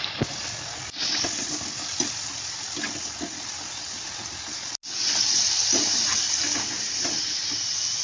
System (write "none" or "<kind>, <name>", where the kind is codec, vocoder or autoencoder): none